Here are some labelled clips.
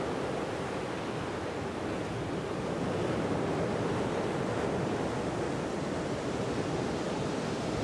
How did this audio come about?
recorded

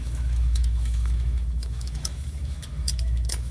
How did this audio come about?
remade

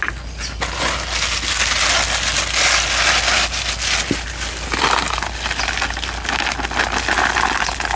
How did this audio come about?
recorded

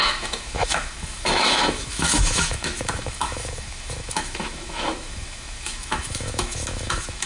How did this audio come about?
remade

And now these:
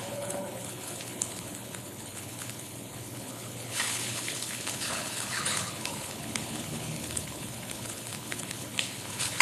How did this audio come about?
remade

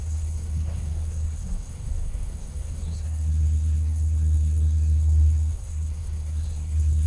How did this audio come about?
remade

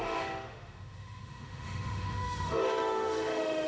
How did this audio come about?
remade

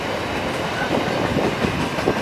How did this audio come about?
remade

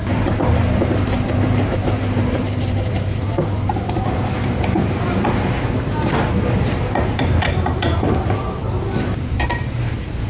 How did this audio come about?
remade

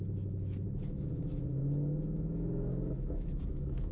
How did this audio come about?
remade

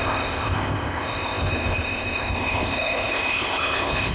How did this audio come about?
remade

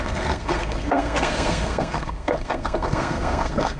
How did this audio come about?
remade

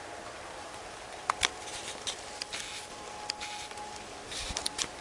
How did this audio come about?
recorded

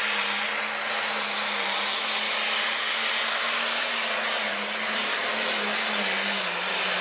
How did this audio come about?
recorded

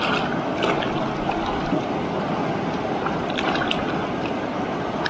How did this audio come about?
recorded